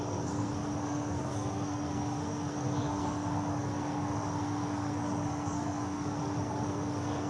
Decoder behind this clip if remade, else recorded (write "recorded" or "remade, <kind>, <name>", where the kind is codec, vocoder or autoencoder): remade, codec, SNAC